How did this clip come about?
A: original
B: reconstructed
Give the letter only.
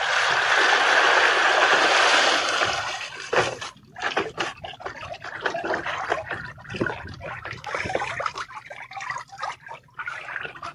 A